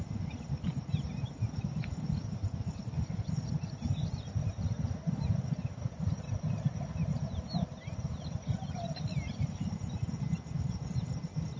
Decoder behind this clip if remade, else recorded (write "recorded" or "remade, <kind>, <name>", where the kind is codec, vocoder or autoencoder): recorded